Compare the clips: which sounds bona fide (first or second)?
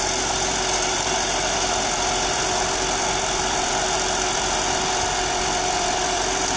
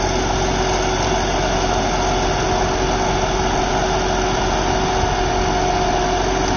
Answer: second